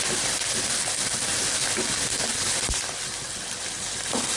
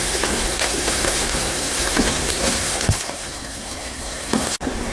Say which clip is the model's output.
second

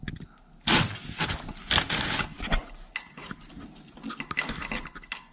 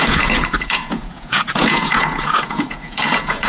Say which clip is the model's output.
second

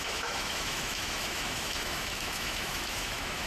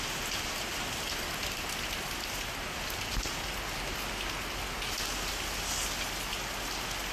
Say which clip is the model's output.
first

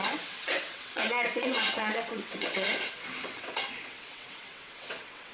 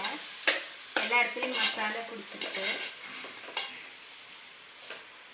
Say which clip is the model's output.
first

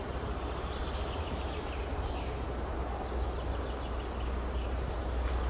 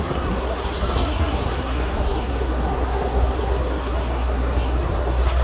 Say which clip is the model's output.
second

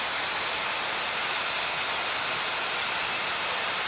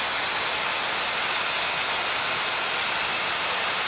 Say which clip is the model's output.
first